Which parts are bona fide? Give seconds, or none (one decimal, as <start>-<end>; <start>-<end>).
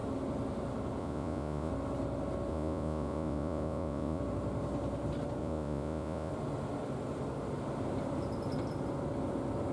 0.0-1.0; 1.7-2.5; 4.2-5.4; 6.3-9.7